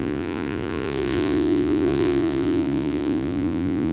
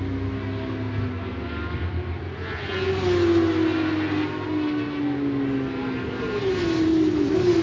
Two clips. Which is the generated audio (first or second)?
first